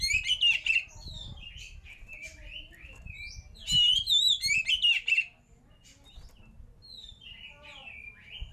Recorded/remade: recorded